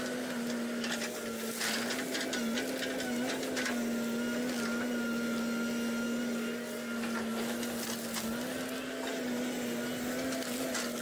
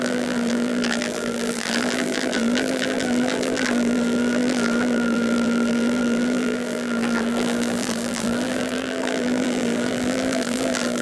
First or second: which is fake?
second